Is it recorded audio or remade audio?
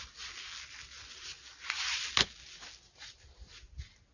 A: recorded